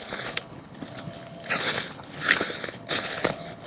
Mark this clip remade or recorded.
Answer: remade